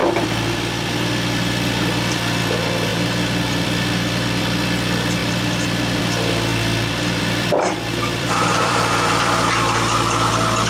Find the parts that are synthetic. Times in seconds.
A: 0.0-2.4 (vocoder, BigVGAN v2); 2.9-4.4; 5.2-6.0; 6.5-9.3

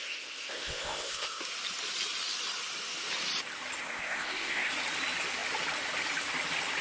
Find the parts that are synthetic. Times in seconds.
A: 0.0-1.4 (codec, ZipCodec); 3.8-4.7

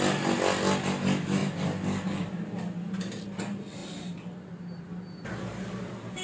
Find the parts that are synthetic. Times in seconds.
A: none

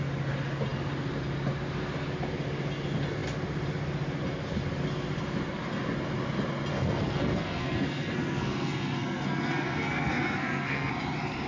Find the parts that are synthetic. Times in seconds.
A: 6.7-10.9 (codec, SNAC)